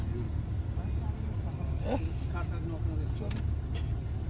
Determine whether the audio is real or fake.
real